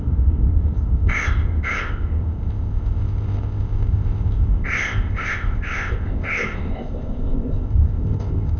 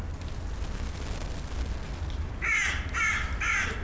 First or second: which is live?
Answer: second